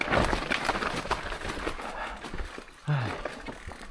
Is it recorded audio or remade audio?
recorded